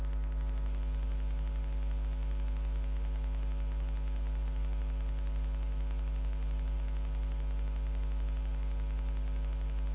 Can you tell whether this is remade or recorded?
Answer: recorded